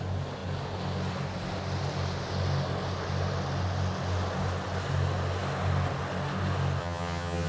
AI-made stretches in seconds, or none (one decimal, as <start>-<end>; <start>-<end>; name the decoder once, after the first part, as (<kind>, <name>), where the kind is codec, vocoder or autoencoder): 6.8-7.5 (vocoder, HiFi-GAN)